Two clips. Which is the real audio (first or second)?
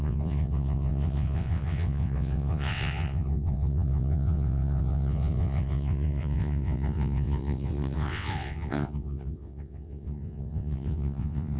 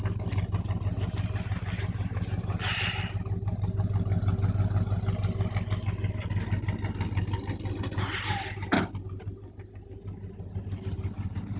second